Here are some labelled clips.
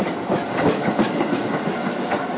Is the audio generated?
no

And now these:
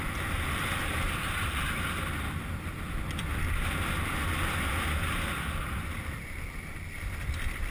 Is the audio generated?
no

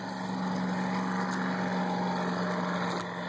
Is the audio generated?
no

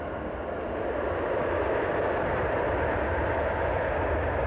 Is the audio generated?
no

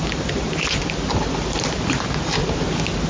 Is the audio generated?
no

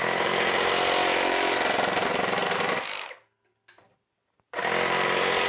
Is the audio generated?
no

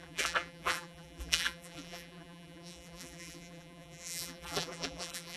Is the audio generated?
yes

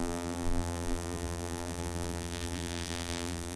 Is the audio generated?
yes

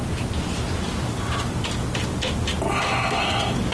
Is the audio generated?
no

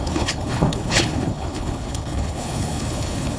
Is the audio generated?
yes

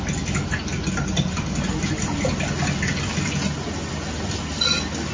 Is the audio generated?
no